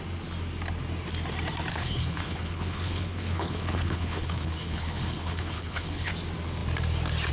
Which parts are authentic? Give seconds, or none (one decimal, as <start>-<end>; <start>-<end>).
0.0-1.7; 6.1-7.3